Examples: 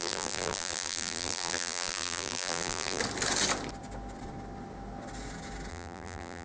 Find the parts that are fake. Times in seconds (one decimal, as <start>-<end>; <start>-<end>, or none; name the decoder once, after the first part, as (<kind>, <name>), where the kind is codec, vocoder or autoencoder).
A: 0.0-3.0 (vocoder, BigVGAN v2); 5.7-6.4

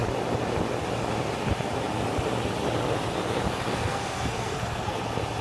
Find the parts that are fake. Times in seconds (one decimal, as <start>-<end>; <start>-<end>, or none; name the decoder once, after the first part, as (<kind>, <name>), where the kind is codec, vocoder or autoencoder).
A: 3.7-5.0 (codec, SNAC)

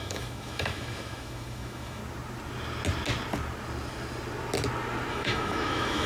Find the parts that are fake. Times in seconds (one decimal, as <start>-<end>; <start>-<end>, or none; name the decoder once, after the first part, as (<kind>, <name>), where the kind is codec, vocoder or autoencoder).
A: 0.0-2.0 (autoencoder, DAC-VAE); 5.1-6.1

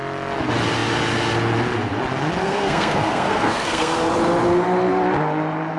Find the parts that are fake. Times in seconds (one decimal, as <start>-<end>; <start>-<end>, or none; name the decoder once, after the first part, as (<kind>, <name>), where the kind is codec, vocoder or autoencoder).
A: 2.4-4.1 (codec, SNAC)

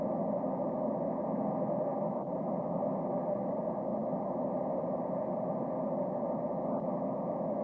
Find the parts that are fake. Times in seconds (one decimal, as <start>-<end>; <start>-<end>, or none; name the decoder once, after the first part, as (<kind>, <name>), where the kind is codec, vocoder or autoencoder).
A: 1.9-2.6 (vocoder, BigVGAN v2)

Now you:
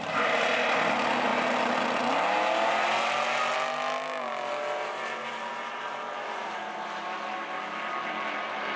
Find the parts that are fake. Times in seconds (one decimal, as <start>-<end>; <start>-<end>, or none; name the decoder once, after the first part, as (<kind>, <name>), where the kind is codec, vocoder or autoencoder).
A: none